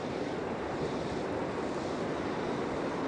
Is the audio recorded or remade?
recorded